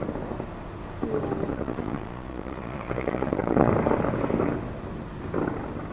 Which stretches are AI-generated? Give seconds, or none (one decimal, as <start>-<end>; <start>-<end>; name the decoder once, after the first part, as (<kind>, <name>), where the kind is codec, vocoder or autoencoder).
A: 1.5-3.7 (vocoder, Vocos)